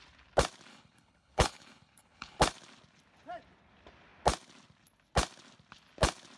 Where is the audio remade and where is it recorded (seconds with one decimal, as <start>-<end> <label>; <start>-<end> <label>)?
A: 0.0-0.7 recorded; 0.7-2.4 remade; 2.4-6.4 recorded